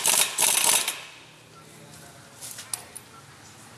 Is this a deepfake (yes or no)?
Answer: no